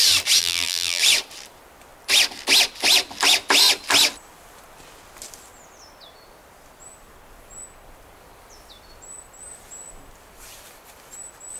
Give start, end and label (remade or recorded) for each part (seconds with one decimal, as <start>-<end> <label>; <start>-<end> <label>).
0.0-0.4 recorded; 0.4-1.0 remade; 1.0-11.6 recorded